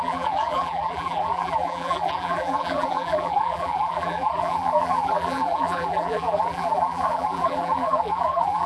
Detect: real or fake fake